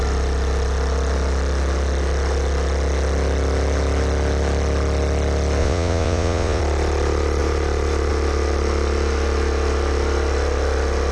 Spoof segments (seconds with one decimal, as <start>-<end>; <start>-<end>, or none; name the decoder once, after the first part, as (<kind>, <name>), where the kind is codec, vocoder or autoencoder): 5.6-6.6 (vocoder, Vocos)